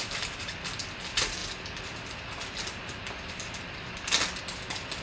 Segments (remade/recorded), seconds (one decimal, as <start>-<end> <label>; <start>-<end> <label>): 0.0-5.0 recorded

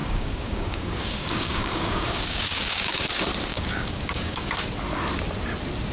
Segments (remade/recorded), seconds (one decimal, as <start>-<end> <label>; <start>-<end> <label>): 0.0-3.1 remade; 3.1-3.5 recorded; 3.5-4.5 remade; 4.5-5.9 recorded

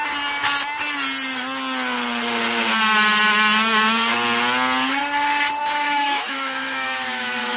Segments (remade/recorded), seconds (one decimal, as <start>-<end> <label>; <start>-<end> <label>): 0.0-5.6 recorded; 5.6-7.6 remade